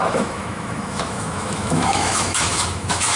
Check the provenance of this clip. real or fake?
fake